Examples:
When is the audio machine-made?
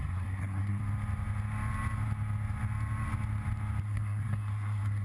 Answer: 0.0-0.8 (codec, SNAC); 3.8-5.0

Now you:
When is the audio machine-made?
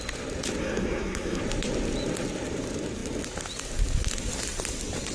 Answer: 0.6-1.4 (codec, SNAC)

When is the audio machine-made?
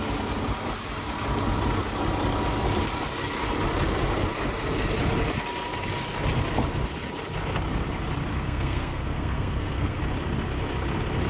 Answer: 8.3-10.0 (codec, SNAC)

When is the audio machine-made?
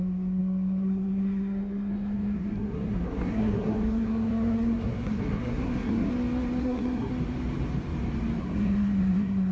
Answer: 0.0-6.1 (codec, SNAC); 6.6-7.1; 8.4-9.5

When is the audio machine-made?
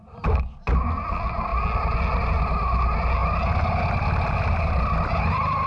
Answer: none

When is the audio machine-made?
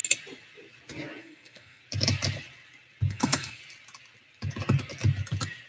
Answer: 1.2-1.8 (codec, SNAC); 3.1-3.6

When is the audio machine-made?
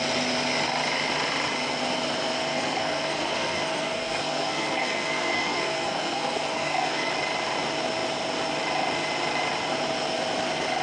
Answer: 2.5-7.1 (codec, SNAC)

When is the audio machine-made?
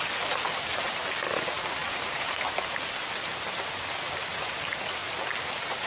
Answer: none